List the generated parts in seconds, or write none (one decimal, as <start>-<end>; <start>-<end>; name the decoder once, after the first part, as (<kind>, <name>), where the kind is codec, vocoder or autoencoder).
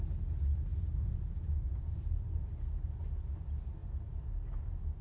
0.7-1.9 (vocoder, Vocos)